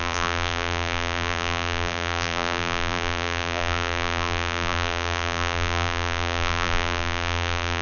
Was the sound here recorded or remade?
remade